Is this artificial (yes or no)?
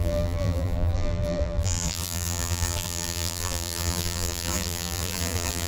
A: yes